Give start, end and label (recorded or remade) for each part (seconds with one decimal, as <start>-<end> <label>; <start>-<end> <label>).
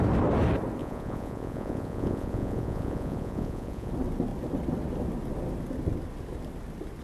0.0-0.8 recorded; 0.8-3.9 remade; 3.9-7.0 recorded